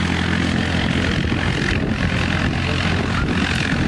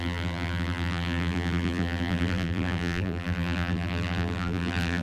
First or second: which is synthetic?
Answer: second